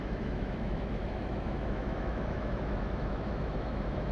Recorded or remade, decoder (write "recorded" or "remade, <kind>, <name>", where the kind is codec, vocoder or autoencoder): remade, autoencoder, DAC-VAE